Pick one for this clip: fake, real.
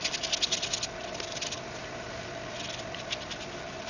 real